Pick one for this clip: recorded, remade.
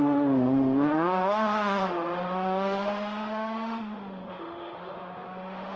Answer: remade